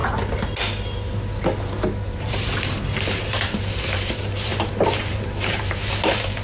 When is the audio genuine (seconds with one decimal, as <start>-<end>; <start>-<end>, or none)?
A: 0.0-2.0; 4.5-5.0